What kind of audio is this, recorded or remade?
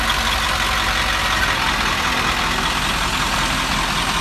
recorded